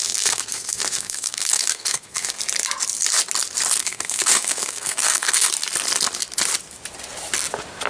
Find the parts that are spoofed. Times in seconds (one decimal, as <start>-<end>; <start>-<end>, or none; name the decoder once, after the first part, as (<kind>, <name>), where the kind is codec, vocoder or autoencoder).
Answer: 0.0-2.4 (codec, SNAC); 3.8-5.5